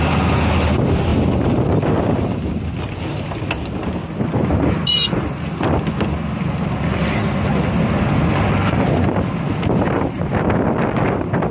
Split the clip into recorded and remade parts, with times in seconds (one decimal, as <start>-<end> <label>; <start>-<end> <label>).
0.0-11.5 recorded